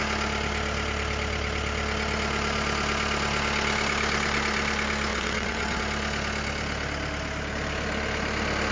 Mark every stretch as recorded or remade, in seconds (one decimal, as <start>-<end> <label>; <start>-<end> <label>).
0.0-5.1 recorded; 5.1-5.8 remade; 5.8-8.7 recorded